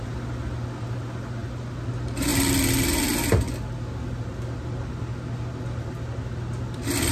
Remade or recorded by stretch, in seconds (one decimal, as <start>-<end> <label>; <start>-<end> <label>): 0.0-7.1 recorded